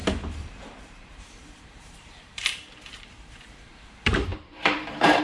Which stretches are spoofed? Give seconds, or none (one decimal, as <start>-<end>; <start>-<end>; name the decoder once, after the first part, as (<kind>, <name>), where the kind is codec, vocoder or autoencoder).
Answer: 0.0-5.2 (vocoder, BigVGAN v2)